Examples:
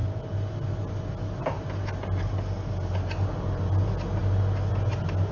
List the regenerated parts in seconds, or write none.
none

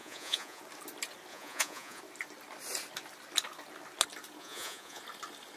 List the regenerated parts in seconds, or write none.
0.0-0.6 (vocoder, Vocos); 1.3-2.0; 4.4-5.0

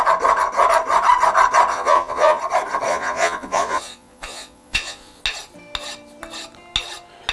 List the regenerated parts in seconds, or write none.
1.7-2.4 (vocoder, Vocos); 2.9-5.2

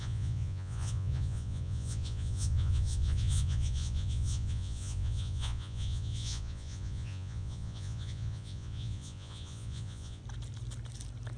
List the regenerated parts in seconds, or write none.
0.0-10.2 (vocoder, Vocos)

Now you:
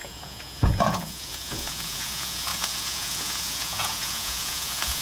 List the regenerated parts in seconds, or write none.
0.0-5.0 (vocoder, Vocos)

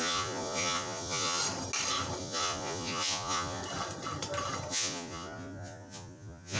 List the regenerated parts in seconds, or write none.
0.0-1.4 (vocoder, Vocos); 2.2-3.6; 4.7-6.6

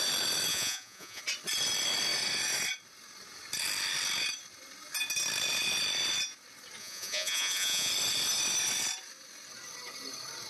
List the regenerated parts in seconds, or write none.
0.5-1.2 (vocoder, Vocos); 6.8-7.9

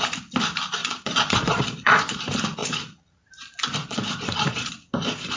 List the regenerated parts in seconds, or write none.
0.8-2.2 (vocoder, Vocos); 2.6-3.2; 3.8-4.9